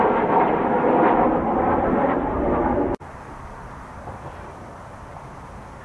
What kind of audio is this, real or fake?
real